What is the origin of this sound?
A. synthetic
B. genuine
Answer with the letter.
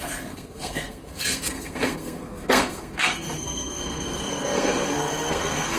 A